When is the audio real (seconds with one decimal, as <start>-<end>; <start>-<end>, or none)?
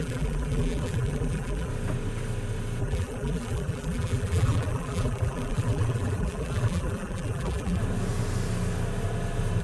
1.7-2.8; 7.8-9.6